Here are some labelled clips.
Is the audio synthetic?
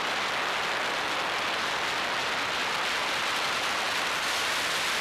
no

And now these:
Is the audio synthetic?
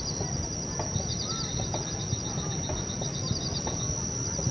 no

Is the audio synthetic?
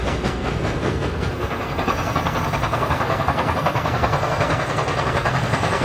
yes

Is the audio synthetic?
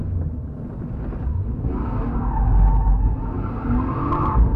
no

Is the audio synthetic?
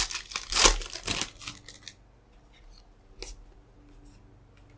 no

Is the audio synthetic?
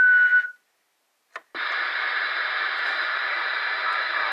no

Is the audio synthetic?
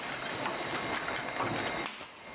no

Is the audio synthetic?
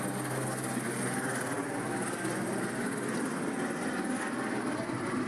no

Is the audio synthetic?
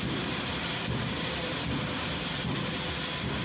no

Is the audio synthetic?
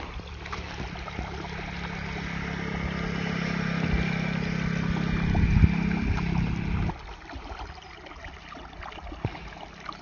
no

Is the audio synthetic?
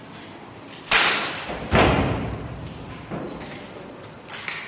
no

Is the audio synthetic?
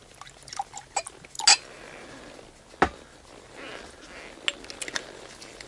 no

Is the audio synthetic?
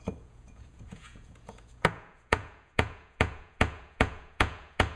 yes